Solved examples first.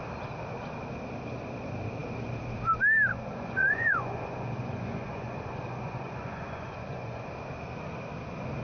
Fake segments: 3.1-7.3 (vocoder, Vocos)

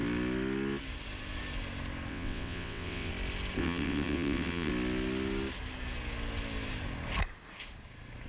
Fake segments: 2.1-3.1 (vocoder, WaveNeXt); 3.6-4.7

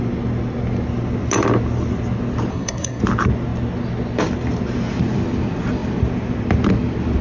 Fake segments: 2.5-3.0 (codec, SNAC)